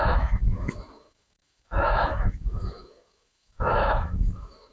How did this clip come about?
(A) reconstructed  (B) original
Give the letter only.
A